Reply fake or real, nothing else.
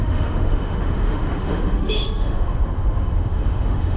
fake